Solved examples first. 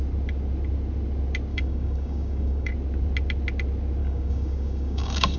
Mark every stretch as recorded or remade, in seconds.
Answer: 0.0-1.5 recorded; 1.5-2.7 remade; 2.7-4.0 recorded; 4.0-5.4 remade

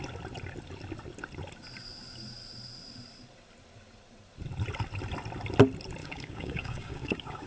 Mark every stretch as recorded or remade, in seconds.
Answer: 0.0-6.0 recorded; 6.0-7.5 remade

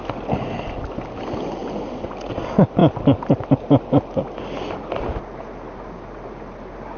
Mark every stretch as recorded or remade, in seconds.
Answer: 0.0-7.0 recorded

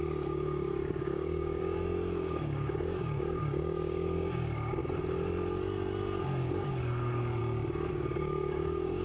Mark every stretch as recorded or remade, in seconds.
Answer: 0.0-4.8 remade; 4.8-6.2 recorded; 6.2-7.4 remade; 7.4-7.9 recorded; 7.9-9.0 remade

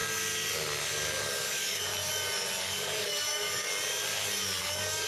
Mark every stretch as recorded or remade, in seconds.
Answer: 0.0-1.2 recorded; 1.2-1.9 remade; 1.9-2.6 recorded; 2.6-3.7 remade; 3.7-4.6 recorded; 4.6-5.1 remade

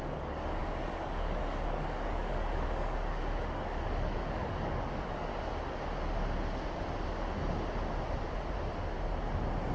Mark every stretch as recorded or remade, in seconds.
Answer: 0.0-5.3 remade; 5.3-9.7 recorded

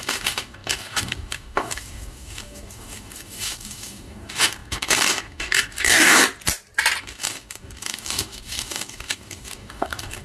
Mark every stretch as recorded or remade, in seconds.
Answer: 0.0-6.2 remade; 6.2-7.0 recorded; 7.0-10.2 remade

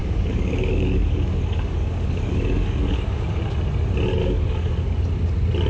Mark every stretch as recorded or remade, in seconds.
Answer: 0.0-3.4 remade; 3.4-4.2 recorded; 4.2-5.1 remade; 5.1-5.7 recorded